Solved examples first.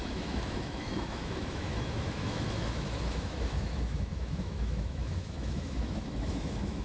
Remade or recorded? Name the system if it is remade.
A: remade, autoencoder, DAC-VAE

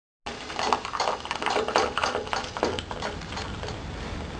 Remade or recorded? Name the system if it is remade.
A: recorded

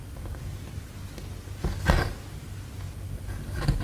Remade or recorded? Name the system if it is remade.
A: recorded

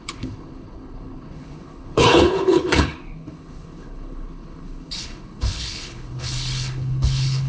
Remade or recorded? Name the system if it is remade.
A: remade, codec, HILCodec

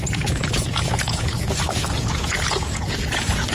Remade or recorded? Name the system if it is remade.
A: remade, vocoder, Vocos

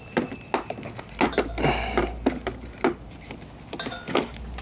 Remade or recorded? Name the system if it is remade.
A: recorded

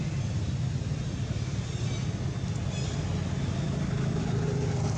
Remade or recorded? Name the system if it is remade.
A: recorded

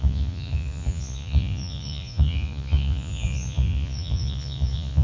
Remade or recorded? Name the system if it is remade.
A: remade, vocoder, Vocos